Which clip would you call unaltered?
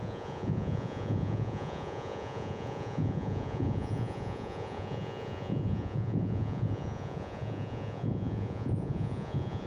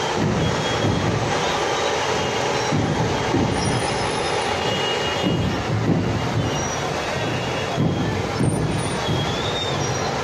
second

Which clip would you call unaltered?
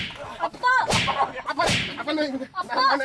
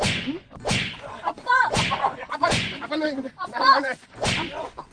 first